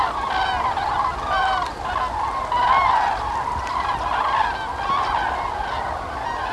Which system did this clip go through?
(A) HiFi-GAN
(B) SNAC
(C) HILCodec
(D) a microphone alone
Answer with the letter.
D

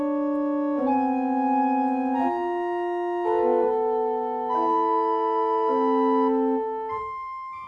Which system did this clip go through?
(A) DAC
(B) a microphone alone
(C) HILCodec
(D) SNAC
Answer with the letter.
B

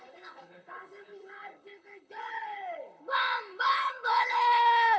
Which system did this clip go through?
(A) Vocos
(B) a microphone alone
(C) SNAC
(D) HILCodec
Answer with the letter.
D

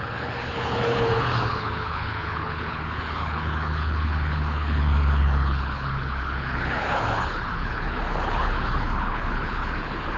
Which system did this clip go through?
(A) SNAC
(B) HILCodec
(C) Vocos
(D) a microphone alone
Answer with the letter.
B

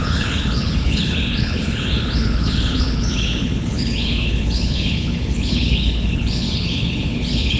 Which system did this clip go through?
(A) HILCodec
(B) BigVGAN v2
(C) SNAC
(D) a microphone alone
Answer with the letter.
A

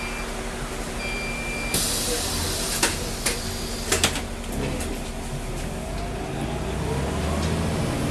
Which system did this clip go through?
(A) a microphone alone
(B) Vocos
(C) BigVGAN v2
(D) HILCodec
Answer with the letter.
A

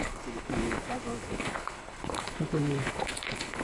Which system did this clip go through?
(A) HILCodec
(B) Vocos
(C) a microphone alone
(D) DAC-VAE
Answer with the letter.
A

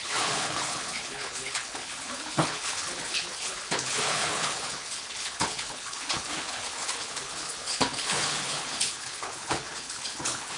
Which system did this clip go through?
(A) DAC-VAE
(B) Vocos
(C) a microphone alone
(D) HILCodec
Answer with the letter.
D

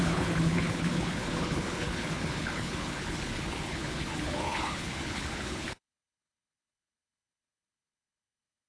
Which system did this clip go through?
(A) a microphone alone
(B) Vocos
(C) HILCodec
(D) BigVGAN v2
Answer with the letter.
C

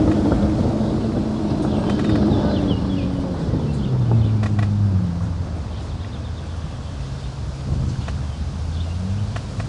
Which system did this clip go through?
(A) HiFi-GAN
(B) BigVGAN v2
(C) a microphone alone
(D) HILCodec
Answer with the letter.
C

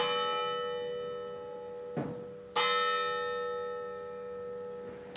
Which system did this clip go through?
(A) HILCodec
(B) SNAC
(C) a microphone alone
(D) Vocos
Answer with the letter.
C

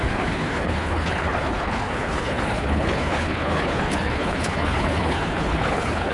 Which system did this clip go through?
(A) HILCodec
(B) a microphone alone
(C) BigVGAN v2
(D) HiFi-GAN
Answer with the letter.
A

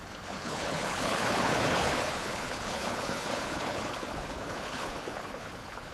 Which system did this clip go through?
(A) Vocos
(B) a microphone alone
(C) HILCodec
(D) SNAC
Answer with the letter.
C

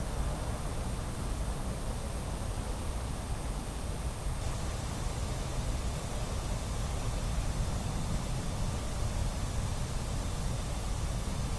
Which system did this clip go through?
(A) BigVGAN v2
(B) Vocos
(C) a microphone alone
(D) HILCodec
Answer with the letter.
C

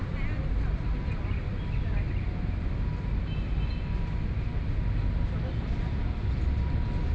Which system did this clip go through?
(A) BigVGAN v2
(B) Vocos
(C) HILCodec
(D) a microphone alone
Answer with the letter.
D